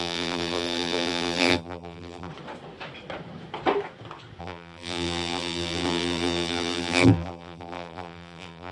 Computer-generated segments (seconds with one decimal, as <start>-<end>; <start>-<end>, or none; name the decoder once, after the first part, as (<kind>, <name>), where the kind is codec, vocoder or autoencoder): 0.0-2.3 (vocoder, BigVGAN v2); 4.4-8.7